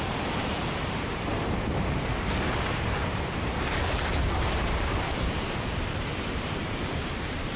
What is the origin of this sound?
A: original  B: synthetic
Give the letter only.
B